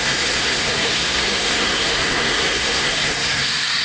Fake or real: fake